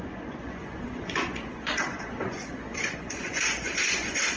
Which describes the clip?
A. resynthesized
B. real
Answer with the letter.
A